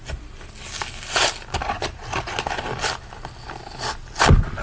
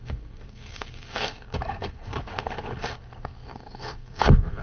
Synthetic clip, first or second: second